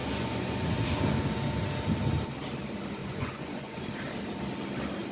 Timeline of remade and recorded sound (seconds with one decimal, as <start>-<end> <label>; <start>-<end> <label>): 0.0-0.8 remade; 0.8-3.0 recorded; 3.0-3.9 remade; 3.9-5.1 recorded

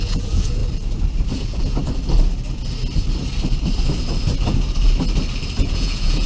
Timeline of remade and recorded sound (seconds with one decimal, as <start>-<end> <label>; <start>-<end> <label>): 0.0-0.6 remade; 0.6-1.3 recorded; 1.3-1.8 remade; 1.8-5.6 recorded; 5.6-6.3 remade

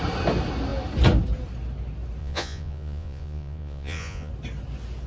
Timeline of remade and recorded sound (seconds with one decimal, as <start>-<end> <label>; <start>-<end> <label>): 0.0-2.2 recorded; 2.2-4.3 remade; 4.3-5.1 recorded

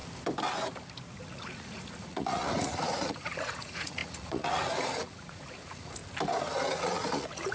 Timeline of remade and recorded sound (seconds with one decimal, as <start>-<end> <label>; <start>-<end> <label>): 0.0-1.1 recorded; 1.1-6.0 remade; 6.0-6.8 recorded; 6.8-7.5 remade

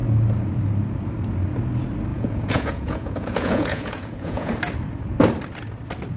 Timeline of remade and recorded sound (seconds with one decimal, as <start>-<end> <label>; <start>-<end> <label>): 0.0-2.1 recorded; 2.1-4.5 remade; 4.5-6.2 recorded